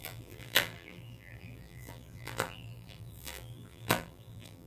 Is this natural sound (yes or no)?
no